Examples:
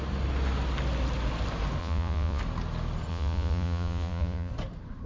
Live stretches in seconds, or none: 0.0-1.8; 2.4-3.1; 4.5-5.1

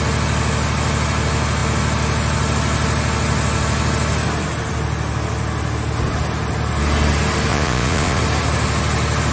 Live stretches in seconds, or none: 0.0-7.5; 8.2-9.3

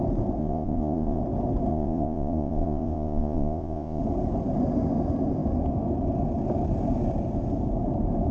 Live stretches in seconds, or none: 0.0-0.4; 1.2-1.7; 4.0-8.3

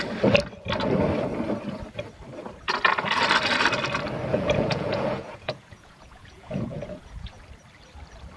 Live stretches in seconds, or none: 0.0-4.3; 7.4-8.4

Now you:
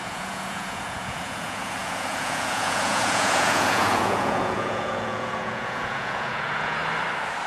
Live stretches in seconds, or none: 6.8-7.5